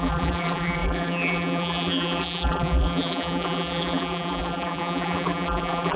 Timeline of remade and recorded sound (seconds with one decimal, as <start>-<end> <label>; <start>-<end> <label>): 0.0-6.0 remade